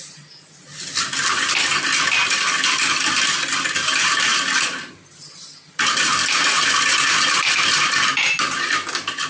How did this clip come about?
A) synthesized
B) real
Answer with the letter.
B